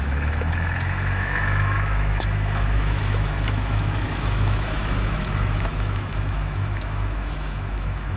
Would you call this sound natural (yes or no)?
no